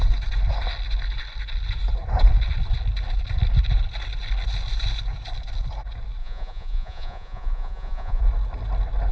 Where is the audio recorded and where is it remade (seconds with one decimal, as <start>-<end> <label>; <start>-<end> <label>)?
0.0-6.2 recorded; 6.2-8.2 remade; 8.2-9.1 recorded